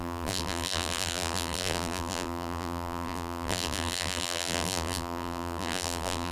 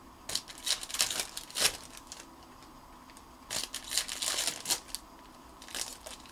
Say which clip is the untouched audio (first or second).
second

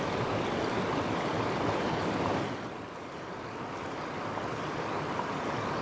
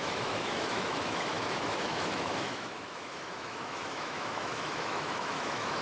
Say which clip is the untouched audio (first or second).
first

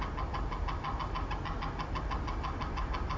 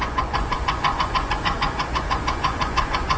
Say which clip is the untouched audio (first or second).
first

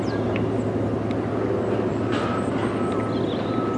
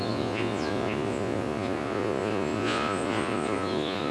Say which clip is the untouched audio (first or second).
first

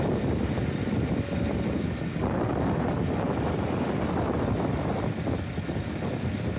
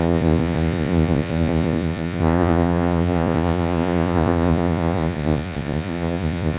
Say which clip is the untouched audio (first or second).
first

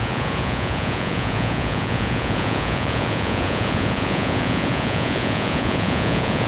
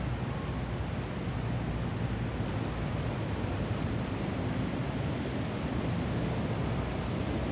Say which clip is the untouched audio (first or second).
second